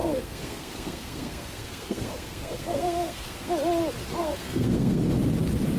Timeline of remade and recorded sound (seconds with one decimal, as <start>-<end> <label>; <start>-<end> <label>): 0.0-3.5 remade; 3.5-4.2 recorded; 4.2-5.0 remade; 5.0-5.8 recorded